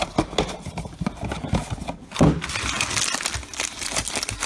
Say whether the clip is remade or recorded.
recorded